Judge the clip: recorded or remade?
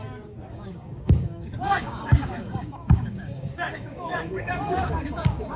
remade